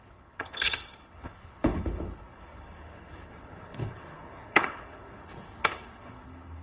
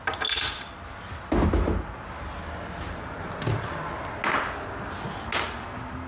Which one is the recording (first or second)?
second